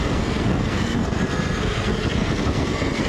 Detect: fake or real fake